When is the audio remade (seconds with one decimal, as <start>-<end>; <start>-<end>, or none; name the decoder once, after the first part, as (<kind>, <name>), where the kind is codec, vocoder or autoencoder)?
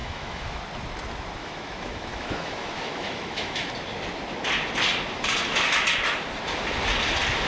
0.0-0.6 (autoencoder, DAC-VAE); 1.4-3.7